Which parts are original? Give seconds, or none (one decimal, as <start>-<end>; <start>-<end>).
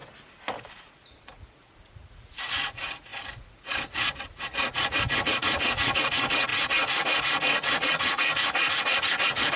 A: 0.0-0.7